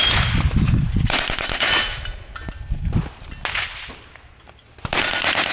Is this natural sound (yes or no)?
yes